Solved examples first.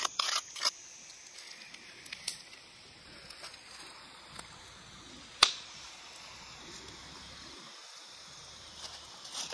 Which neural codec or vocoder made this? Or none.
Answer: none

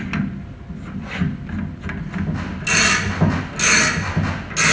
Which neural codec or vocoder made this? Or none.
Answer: none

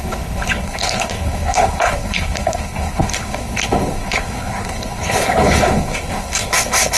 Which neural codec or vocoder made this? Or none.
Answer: codec, HILCodec